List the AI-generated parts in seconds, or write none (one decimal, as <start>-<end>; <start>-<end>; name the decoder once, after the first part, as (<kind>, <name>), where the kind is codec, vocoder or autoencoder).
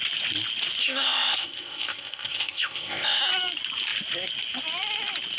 0.8-3.2 (codec, ZipCodec)